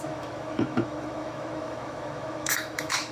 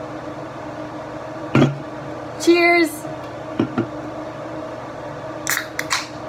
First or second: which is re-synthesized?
first